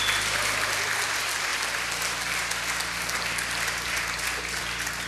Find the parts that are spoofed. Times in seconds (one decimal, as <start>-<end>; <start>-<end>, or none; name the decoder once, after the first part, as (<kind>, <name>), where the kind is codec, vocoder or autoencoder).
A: none